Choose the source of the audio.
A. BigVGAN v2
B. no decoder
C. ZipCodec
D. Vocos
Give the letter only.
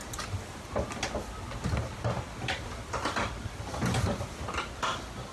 B